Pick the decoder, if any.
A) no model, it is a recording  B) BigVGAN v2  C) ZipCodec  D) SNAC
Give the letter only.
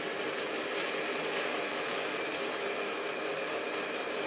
A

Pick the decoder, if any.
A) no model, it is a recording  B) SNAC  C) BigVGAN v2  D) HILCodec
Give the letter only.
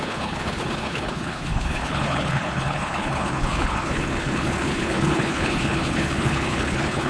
D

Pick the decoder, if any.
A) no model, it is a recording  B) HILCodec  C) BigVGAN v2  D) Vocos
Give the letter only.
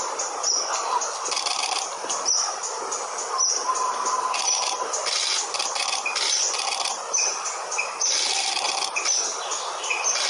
A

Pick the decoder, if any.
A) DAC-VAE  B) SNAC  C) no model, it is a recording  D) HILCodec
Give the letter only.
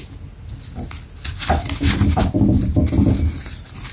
C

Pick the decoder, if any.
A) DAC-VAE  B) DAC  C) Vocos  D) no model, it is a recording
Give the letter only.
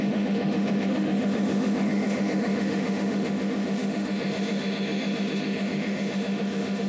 A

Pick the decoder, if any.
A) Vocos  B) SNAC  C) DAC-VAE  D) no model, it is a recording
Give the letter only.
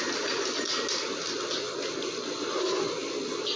D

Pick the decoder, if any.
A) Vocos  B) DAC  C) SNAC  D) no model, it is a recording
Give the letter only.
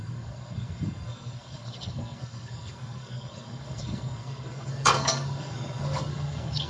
C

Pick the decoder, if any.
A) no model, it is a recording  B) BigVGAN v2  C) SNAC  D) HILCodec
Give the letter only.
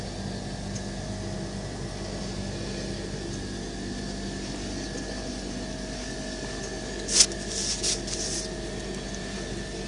A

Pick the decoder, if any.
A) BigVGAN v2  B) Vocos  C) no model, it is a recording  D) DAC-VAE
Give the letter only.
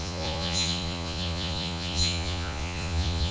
B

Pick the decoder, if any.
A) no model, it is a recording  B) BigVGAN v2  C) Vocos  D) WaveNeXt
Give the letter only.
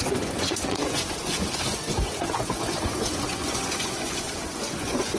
C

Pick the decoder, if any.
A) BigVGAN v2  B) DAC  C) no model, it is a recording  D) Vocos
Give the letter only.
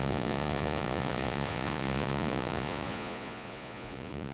D